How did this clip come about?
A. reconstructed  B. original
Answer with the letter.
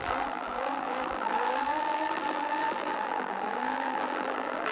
A